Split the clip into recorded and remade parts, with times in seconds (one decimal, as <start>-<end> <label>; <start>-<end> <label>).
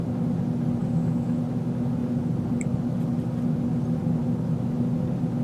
0.0-0.8 recorded; 0.8-1.4 remade; 1.4-5.4 recorded